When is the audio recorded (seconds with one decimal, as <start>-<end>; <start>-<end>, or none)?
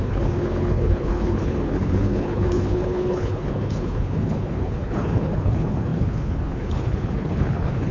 none